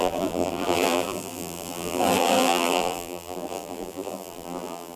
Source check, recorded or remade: remade